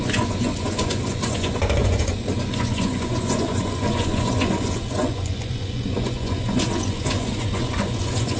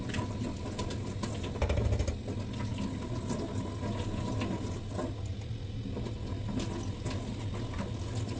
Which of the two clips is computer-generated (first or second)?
first